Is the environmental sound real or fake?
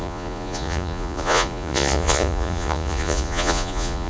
fake